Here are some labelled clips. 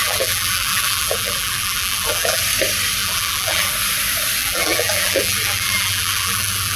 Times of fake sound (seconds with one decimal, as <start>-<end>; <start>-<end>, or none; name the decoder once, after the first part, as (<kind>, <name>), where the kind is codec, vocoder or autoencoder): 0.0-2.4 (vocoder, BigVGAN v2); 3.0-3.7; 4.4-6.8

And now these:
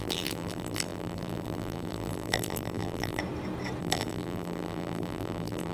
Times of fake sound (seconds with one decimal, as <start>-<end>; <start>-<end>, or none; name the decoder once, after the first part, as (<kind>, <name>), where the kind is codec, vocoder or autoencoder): 0.0-3.2 (vocoder, BigVGAN v2); 3.8-5.7

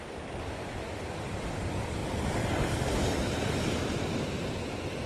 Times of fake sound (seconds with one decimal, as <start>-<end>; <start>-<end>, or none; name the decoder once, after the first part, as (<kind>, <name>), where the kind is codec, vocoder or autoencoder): none

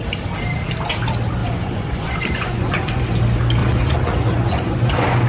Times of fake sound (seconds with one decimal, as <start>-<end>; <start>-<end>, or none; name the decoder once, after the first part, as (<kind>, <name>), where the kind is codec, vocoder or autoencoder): 1.4-3.0 (vocoder, Vocos); 3.6-5.3